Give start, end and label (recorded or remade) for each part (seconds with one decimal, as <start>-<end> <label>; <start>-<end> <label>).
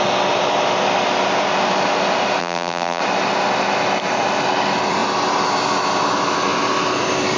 0.0-2.4 recorded; 2.4-3.0 remade; 3.0-7.4 recorded